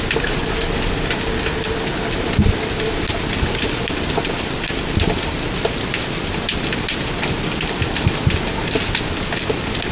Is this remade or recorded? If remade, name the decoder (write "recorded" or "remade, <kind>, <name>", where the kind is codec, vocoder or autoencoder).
recorded